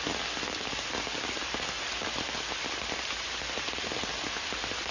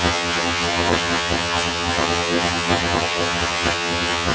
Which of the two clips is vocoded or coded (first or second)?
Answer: second